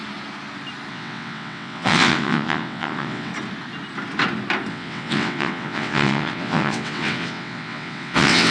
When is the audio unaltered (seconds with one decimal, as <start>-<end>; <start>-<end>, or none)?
0.0-0.9; 3.3-4.7